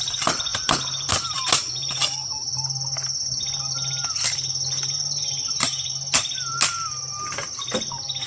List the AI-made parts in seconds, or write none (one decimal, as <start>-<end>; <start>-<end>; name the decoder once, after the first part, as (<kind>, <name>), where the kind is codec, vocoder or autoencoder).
none